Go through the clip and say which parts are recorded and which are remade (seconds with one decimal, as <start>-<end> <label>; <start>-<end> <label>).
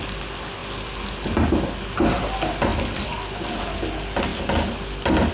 0.0-5.3 recorded